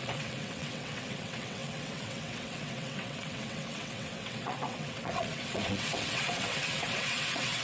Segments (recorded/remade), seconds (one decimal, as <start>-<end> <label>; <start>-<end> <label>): 0.0-7.6 remade